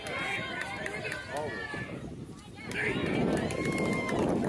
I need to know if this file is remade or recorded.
recorded